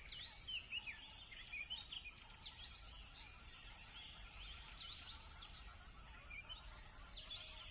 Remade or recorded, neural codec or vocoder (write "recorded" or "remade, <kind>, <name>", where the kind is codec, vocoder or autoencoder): recorded